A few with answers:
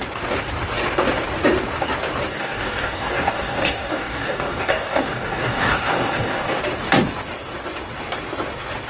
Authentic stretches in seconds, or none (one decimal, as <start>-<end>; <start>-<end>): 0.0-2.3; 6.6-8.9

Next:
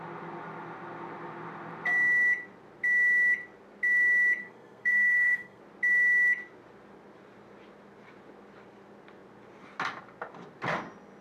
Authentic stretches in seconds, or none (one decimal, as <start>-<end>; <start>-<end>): 0.0-4.4; 5.6-11.2

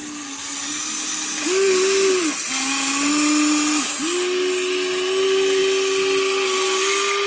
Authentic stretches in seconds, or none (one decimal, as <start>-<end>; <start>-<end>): 0.0-7.3